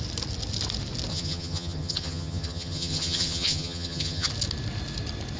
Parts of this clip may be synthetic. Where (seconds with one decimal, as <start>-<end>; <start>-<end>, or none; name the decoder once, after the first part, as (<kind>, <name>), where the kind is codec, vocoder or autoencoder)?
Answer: 1.1-4.3 (vocoder, HiFi-GAN)